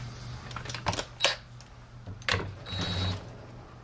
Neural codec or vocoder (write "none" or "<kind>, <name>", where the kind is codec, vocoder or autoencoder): none